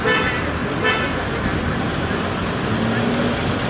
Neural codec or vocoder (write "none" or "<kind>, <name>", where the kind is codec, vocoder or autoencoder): none